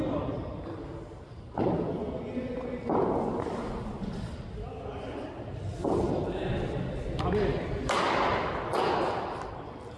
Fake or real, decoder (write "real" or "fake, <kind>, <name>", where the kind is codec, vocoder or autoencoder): real